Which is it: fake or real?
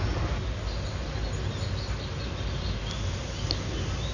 real